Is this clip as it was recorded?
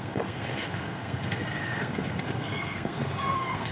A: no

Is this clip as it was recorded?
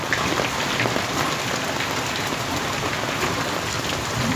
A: yes